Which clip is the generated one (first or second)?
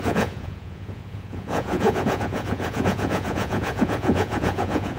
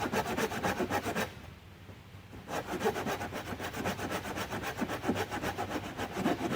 first